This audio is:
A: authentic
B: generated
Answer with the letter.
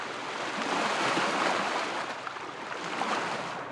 A